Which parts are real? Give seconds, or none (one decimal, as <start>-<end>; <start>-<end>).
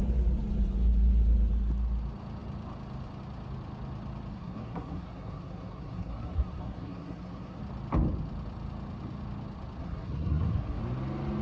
0.0-4.3; 7.6-9.8; 10.8-11.4